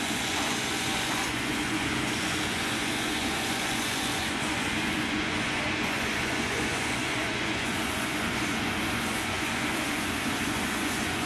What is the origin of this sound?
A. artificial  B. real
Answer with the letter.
A